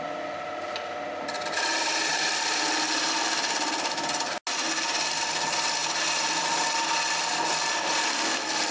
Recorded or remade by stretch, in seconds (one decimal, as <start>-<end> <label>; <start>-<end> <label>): 0.0-2.1 recorded; 2.1-2.7 remade; 2.7-8.7 recorded